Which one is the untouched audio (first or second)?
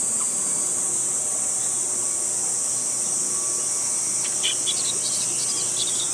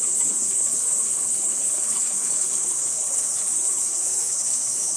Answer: first